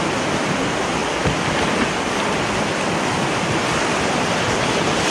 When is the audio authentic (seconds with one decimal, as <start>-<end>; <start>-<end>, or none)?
0.0-5.1